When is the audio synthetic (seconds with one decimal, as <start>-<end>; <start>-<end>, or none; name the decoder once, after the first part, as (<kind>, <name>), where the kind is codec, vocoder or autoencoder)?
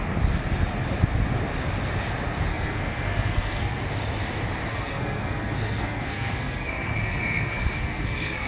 2.5-3.8 (codec, SNAC); 4.7-8.5